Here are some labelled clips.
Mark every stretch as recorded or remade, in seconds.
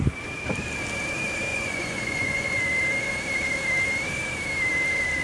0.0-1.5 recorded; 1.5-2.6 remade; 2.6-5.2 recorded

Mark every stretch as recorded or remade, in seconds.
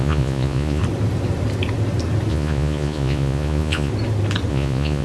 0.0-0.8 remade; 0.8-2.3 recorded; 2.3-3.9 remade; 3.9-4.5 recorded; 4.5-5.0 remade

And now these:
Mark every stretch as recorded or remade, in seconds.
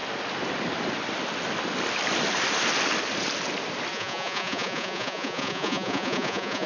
0.0-3.9 recorded; 3.9-6.7 remade